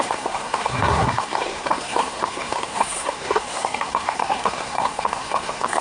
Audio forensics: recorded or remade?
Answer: remade